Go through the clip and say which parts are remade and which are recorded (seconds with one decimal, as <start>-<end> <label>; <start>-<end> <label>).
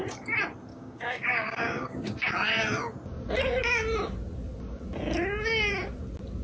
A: 0.0-0.7 recorded; 0.7-2.3 remade; 2.3-6.4 recorded